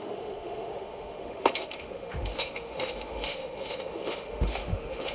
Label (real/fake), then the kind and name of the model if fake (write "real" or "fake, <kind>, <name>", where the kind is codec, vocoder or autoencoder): fake, autoencoder, DAC-VAE